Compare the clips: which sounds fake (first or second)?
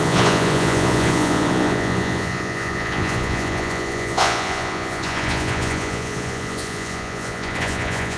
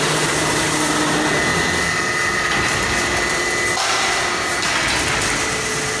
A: first